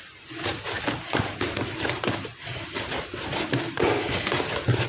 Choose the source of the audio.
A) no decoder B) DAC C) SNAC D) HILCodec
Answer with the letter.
A